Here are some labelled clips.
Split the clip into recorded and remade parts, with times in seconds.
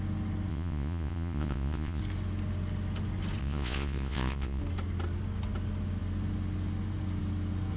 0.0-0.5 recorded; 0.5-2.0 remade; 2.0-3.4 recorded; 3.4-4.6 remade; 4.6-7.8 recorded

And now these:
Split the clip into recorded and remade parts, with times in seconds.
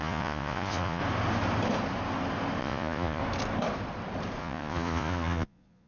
0.0-1.0 remade; 1.0-2.6 recorded; 2.6-3.2 remade; 3.2-4.4 recorded; 4.4-5.9 remade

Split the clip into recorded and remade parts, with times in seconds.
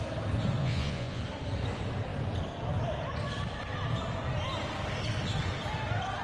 0.0-0.6 recorded; 0.6-1.2 remade; 1.2-6.2 recorded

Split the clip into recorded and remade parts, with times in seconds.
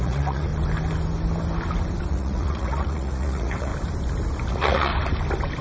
0.0-0.5 remade; 0.5-2.1 recorded; 2.1-3.7 remade; 3.7-4.5 recorded; 4.5-4.9 remade; 4.9-5.6 recorded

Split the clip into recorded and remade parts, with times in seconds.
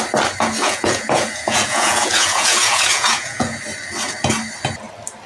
0.0-0.6 recorded; 0.6-3.6 remade; 3.6-5.3 recorded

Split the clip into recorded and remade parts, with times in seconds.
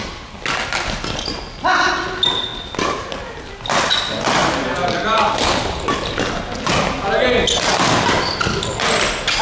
0.0-9.4 recorded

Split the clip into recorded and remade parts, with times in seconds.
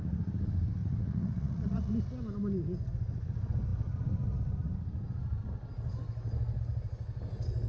0.0-0.8 recorded; 0.8-1.9 remade; 1.9-7.7 recorded